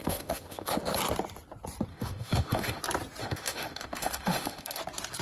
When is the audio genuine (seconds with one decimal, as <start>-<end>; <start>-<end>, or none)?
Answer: 0.8-1.9; 2.8-3.2; 4.8-5.2